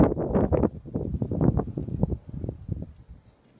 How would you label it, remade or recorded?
recorded